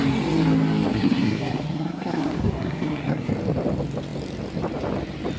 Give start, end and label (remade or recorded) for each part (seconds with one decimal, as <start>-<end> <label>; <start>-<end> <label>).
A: 0.0-0.9 recorded; 0.9-3.3 remade; 3.3-5.4 recorded